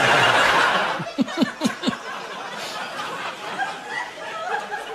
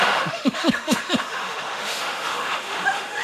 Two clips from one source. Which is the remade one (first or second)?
second